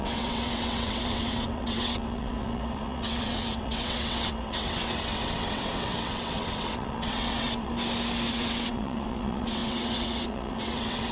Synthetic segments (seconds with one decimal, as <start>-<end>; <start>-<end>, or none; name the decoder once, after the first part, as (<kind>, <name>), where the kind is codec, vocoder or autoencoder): 0.0-7.7 (vocoder, WaveNeXt); 8.3-11.1